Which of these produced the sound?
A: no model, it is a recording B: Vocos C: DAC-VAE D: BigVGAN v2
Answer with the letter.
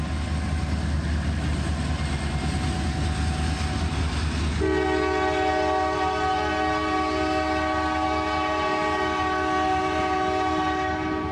A